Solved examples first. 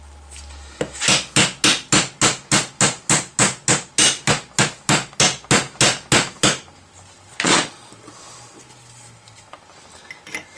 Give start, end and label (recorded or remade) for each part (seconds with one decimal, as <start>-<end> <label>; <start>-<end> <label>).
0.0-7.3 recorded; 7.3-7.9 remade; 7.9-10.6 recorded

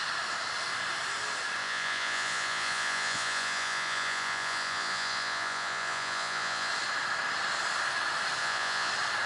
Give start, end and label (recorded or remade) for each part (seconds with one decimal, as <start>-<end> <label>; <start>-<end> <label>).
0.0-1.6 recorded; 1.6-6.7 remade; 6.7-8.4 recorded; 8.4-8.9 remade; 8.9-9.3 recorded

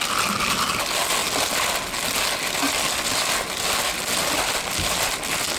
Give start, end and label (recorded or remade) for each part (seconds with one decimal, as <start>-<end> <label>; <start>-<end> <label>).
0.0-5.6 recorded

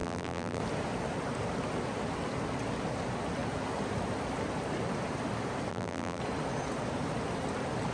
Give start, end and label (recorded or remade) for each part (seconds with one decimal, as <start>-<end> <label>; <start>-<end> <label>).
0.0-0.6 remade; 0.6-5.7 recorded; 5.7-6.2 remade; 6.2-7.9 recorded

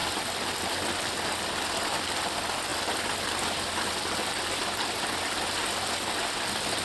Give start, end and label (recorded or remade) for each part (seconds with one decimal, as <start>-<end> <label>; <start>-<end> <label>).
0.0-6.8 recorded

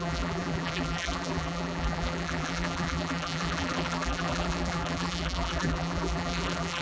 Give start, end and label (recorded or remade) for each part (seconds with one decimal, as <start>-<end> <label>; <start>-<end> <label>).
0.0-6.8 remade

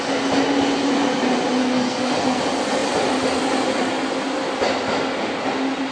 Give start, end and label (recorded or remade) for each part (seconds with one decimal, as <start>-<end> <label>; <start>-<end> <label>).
0.0-1.6 recorded; 1.6-2.4 remade; 2.4-5.9 recorded

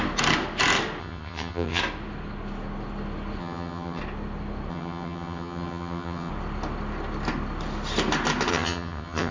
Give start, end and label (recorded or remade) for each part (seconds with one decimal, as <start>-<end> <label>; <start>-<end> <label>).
0.0-1.0 recorded; 1.0-1.8 remade; 1.8-3.4 recorded; 3.4-4.0 remade; 4.0-4.7 recorded; 4.7-6.3 remade; 6.3-8.5 recorded; 8.5-9.3 remade